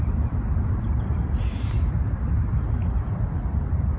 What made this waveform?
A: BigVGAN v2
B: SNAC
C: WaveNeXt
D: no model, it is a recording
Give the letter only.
D